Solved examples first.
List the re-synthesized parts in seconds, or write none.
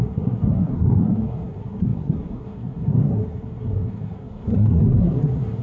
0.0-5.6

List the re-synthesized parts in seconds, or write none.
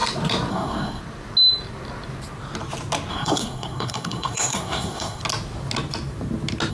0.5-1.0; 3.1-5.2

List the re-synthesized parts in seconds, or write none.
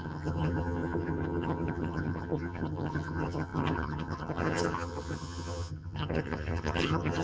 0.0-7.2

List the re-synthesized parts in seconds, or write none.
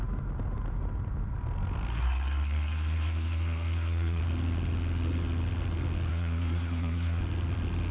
1.9-4.2; 6.1-7.2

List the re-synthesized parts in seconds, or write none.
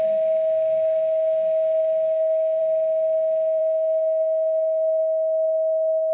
0.0-2.6; 3.6-6.1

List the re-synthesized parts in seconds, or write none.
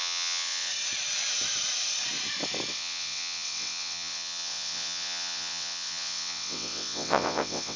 0.0-0.7; 2.7-7.8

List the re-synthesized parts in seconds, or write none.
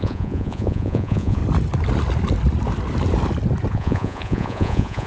0.0-1.4; 3.7-5.1